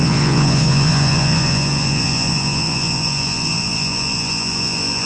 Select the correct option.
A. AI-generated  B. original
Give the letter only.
A